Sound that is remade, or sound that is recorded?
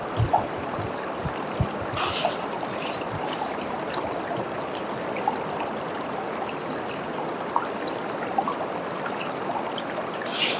remade